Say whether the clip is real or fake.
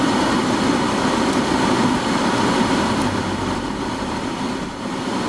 fake